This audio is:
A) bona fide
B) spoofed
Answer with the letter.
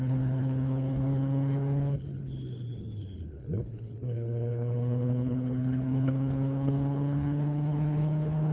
B